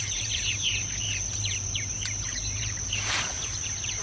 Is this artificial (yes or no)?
yes